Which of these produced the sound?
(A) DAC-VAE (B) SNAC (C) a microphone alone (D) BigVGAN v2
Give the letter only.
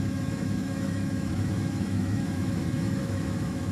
A